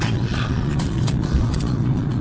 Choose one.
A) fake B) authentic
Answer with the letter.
A